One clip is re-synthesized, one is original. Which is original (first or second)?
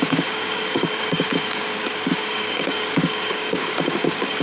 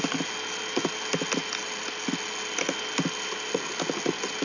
second